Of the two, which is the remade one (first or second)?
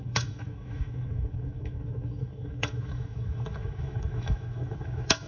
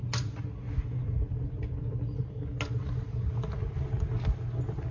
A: first